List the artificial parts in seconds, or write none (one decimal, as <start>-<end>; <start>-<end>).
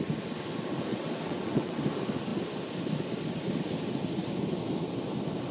0.9-1.8